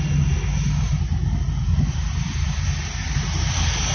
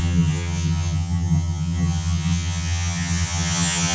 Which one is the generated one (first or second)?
second